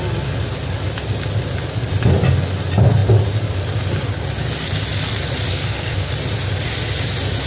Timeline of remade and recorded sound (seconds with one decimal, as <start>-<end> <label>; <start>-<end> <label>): 0.0-5.5 recorded; 5.5-6.1 remade; 6.1-7.5 recorded